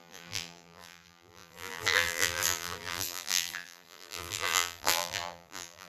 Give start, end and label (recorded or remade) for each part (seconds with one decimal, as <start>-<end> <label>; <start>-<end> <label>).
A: 0.0-5.9 remade